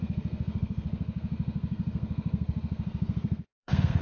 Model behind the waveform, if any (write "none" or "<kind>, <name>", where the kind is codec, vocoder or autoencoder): codec, SNAC